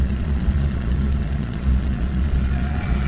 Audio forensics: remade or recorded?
remade